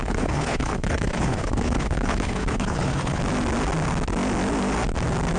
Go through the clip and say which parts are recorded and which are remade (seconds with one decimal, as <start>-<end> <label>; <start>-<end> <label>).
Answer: 0.0-3.2 remade; 3.2-5.4 recorded